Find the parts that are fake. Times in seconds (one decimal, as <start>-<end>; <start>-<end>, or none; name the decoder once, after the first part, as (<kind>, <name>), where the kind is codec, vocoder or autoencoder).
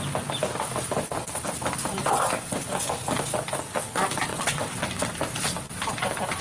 4.3-5.1 (vocoder, WaveNeXt)